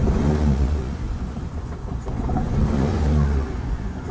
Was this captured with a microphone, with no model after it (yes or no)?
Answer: no